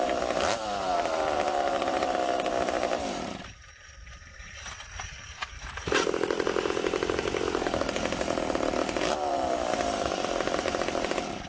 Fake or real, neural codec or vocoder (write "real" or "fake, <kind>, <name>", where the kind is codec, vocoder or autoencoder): fake, vocoder, BigVGAN v2